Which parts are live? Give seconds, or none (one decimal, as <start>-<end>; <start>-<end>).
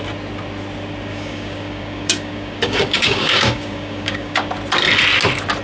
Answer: 0.0-1.1; 4.5-5.6